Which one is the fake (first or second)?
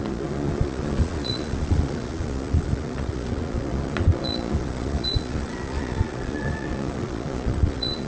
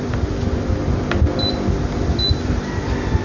first